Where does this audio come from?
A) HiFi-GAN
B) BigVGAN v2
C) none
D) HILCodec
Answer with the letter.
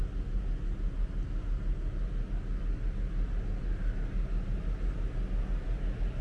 C